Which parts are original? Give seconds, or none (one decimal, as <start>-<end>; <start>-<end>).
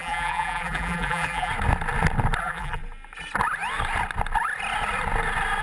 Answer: 1.5-2.4; 2.8-5.6